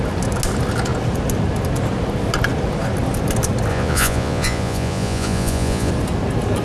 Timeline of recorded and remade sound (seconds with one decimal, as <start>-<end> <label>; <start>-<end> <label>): 0.0-3.7 recorded; 3.7-5.9 remade; 5.9-6.6 recorded